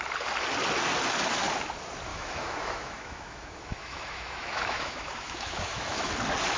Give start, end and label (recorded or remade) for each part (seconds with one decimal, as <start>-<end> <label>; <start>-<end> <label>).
0.0-2.1 recorded; 2.1-6.1 remade; 6.1-6.6 recorded